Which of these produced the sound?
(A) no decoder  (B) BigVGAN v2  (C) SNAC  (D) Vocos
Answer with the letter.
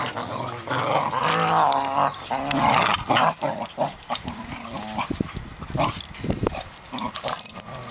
A